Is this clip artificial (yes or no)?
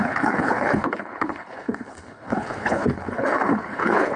yes